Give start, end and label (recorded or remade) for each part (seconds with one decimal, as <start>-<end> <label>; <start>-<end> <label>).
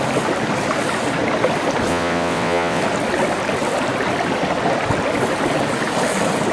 0.0-1.9 recorded; 1.9-2.8 remade; 2.8-6.5 recorded